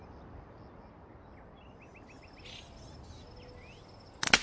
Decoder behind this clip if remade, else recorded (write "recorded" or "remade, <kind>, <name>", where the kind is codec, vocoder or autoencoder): recorded